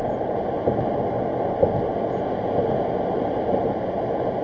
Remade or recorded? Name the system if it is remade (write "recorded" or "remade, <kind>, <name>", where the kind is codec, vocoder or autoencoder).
recorded